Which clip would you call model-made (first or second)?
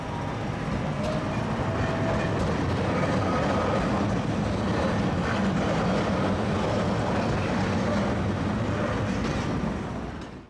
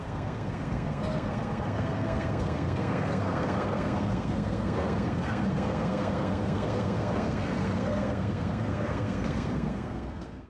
second